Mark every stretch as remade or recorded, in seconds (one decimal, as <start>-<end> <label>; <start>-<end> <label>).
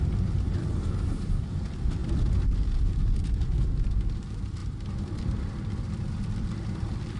0.0-7.2 remade